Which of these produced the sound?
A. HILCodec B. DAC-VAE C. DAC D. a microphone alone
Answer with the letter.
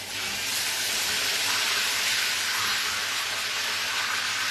D